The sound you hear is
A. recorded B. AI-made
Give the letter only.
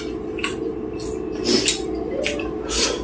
A